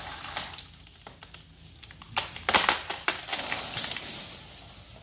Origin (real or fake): real